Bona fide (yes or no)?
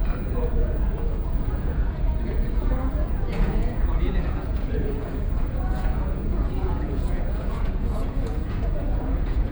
no